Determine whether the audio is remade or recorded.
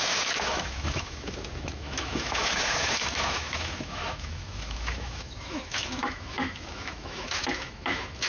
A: remade